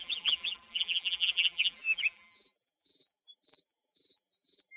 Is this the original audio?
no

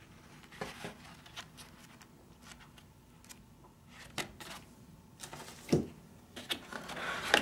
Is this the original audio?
yes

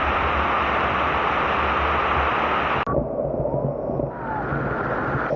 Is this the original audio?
yes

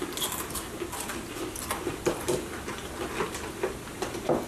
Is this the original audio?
yes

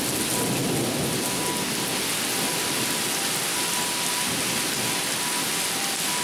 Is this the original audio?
yes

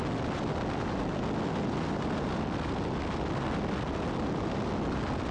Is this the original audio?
yes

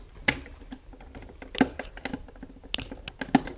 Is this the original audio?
yes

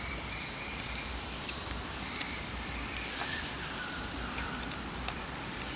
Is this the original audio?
no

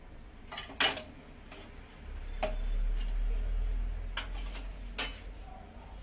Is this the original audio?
yes